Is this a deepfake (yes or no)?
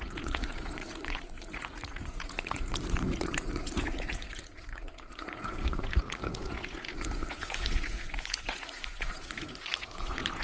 yes